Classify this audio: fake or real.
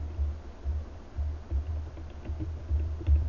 real